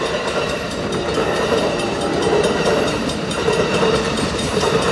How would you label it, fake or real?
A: fake